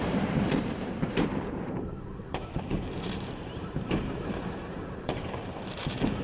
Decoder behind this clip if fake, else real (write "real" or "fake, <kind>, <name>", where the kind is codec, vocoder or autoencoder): fake, vocoder, BigVGAN v2